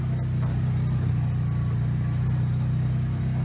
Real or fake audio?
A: real